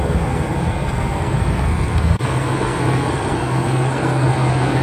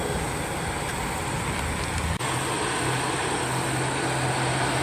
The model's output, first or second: first